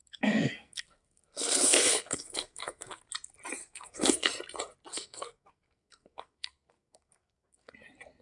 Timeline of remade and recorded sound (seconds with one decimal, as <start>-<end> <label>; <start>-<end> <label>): 0.0-3.0 remade; 3.0-3.6 recorded; 3.6-4.3 remade; 4.3-4.9 recorded; 4.9-7.7 remade; 7.7-8.2 recorded